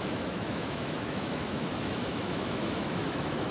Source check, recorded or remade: remade